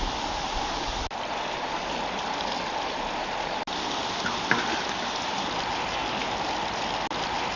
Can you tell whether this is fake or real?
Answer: real